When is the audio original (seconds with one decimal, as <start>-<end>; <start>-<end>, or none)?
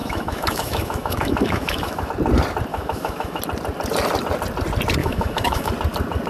2.1-2.7; 3.4-5.0; 5.7-6.3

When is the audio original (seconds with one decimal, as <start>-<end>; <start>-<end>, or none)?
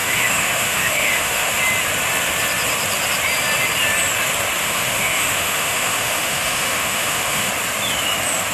1.6-4.6; 7.5-8.5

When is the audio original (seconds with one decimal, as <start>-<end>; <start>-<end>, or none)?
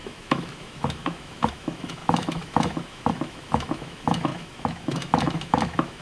none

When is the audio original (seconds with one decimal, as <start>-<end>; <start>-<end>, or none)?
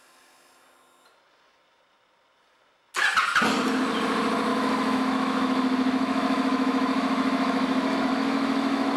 0.0-4.5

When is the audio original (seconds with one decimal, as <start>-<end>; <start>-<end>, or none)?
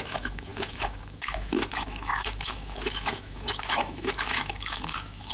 none